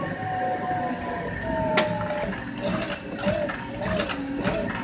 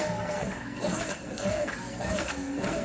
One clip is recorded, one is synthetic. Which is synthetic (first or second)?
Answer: second